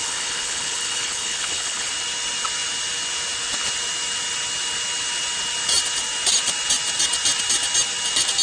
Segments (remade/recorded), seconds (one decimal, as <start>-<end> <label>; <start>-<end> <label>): 0.0-1.9 remade; 1.9-8.4 recorded